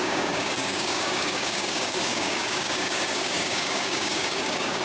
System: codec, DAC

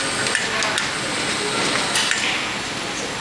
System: none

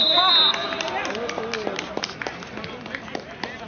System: none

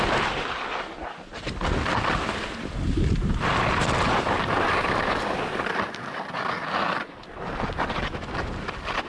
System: none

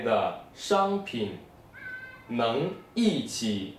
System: none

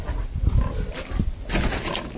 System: none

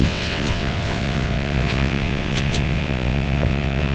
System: vocoder, WaveNeXt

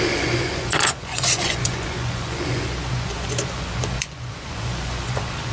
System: vocoder, Vocos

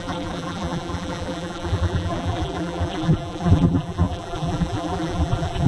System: vocoder, BigVGAN v2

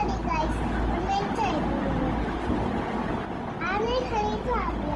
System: none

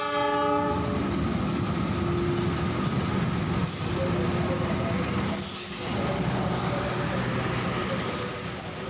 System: none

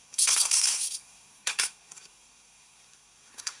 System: codec, SNAC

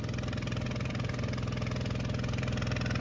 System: none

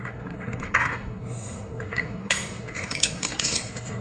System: codec, SNAC